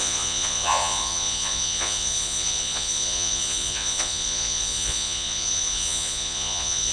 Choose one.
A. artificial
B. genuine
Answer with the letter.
A